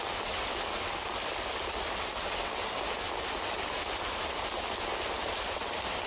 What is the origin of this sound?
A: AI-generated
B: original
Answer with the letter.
B